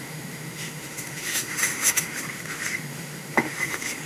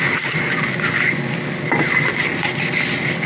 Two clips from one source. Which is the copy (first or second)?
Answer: first